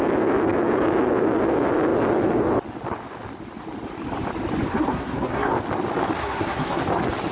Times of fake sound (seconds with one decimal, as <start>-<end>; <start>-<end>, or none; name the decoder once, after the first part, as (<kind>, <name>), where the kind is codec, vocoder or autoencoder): 4.7-5.5 (codec, SNAC); 6.2-6.8